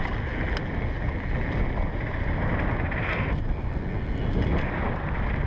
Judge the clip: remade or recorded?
recorded